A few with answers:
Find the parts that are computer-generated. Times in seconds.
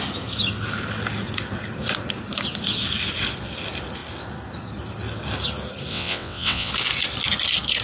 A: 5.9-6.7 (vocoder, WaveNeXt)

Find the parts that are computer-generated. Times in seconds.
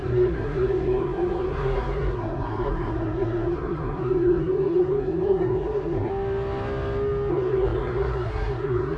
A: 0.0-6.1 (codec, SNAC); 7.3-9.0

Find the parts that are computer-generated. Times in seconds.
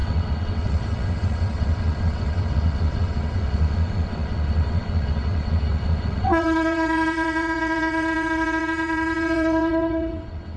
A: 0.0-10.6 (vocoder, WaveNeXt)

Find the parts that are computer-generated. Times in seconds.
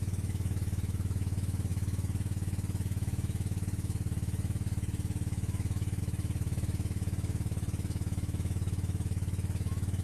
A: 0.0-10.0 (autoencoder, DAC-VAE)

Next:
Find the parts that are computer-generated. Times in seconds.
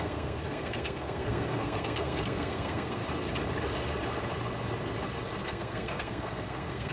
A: 0.0-3.0 (codec, SNAC); 5.4-6.9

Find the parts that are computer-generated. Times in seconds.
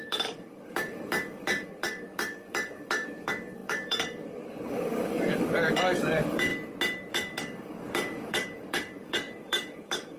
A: 0.0-6.5 (codec, DAC); 7.1-10.2